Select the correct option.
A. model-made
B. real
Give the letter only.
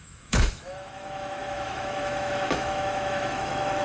A